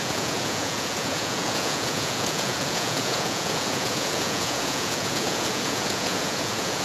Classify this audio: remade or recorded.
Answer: remade